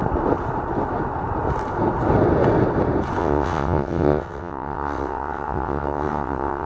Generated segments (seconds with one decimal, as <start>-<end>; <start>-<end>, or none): 3.2-6.7